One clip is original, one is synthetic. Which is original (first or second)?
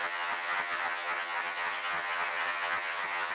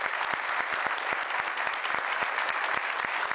second